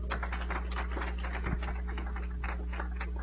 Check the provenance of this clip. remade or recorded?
recorded